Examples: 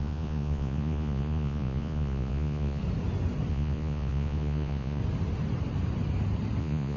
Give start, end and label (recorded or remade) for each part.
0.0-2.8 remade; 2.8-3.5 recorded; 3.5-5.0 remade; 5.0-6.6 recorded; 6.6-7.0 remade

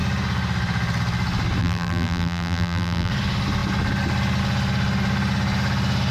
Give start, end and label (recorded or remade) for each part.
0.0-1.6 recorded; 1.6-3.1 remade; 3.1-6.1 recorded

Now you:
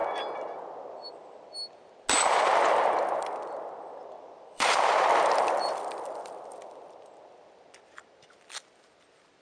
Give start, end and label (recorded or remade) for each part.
0.0-2.1 recorded; 2.1-9.4 remade